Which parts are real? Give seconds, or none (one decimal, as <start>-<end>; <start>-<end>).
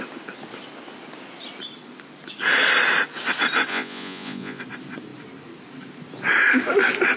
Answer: 0.0-3.7; 4.6-7.2